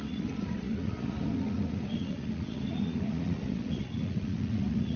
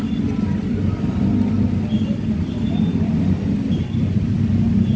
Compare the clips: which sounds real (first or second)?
second